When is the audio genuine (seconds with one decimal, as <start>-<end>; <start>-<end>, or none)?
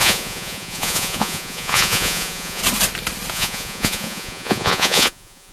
2.6-3.3